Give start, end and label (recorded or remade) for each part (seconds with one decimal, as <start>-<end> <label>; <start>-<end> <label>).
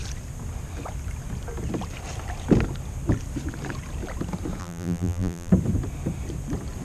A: 0.0-4.6 recorded; 4.6-5.5 remade; 5.5-6.8 recorded